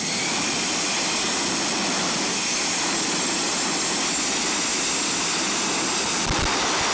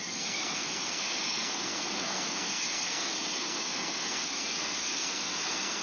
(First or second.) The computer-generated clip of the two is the second